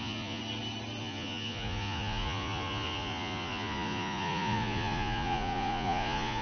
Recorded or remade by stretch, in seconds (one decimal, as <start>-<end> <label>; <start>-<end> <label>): 0.0-0.4 remade; 0.4-1.0 recorded; 1.0-6.4 remade